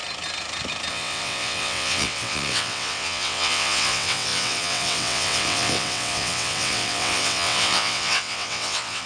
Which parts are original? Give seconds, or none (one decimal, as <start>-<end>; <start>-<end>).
0.0-0.9